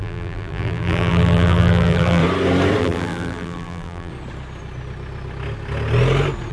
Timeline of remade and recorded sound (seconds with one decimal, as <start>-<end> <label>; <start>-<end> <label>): 0.0-2.2 remade; 2.2-2.8 recorded; 2.8-4.1 remade; 4.1-6.5 recorded